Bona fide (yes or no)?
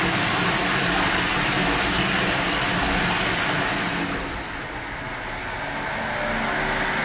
yes